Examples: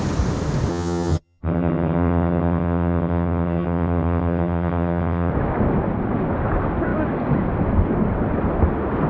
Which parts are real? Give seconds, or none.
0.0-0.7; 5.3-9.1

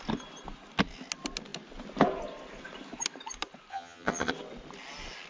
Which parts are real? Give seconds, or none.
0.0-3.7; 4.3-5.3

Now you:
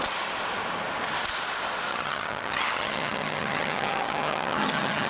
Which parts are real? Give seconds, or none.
0.0-1.9